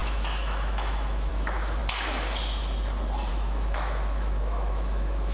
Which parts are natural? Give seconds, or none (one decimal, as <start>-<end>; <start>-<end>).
1.8-3.3